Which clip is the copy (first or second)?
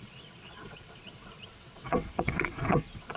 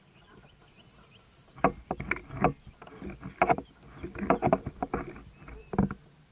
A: first